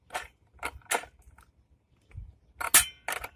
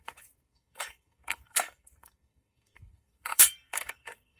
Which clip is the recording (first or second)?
first